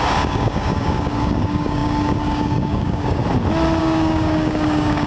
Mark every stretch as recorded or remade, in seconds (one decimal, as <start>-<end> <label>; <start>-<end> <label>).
0.0-3.2 remade; 3.2-3.8 recorded; 3.8-5.1 remade